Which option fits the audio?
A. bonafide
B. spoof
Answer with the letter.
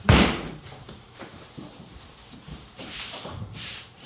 B